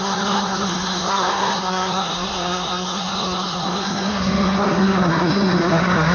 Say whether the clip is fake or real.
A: fake